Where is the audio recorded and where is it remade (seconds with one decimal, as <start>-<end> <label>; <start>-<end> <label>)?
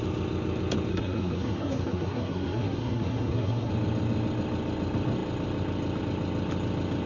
0.0-0.9 recorded; 0.9-3.7 remade; 3.7-7.1 recorded